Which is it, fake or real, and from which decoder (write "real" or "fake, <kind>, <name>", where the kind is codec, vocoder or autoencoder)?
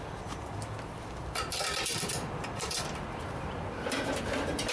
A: fake, vocoder, BigVGAN v2